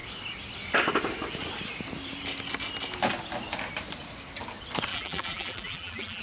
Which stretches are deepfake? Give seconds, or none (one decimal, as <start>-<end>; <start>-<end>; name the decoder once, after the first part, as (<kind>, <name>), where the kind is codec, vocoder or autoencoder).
4.9-6.2 (vocoder, BigVGAN v2)